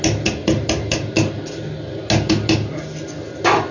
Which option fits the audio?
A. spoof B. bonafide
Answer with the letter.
B